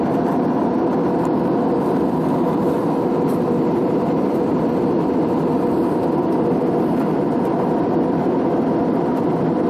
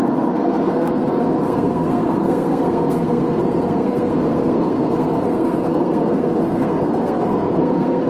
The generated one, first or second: second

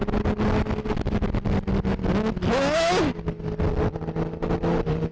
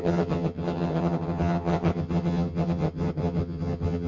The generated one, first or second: second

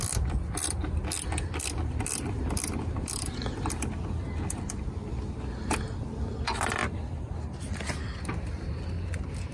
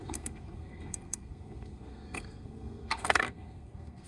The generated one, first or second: second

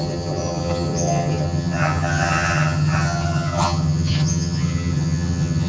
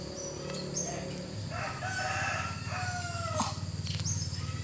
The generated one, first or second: first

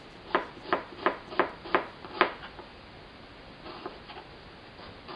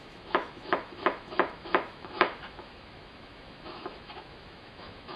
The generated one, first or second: second